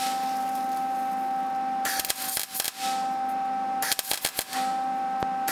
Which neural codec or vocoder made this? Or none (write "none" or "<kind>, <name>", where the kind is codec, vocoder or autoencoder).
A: none